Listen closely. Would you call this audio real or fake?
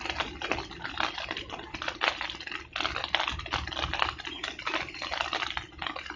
real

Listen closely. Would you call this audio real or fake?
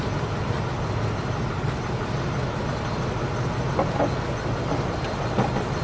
real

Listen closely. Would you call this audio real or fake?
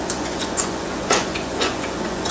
fake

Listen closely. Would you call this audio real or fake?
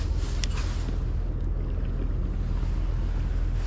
real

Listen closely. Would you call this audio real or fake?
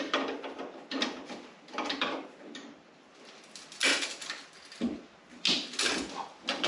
real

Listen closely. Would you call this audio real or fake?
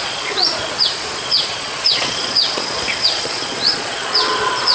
fake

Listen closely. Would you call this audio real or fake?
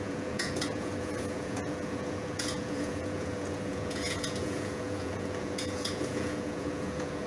fake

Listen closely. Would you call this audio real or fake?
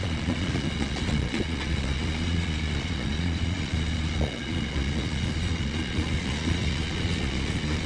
fake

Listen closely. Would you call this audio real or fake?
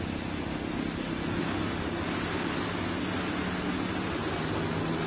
real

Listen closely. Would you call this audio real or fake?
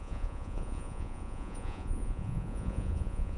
fake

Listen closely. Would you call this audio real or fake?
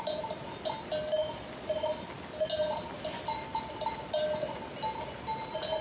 real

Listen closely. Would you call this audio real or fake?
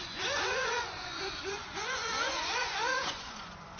fake